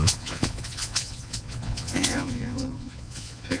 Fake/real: fake